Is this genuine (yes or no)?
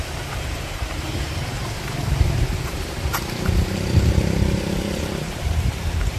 no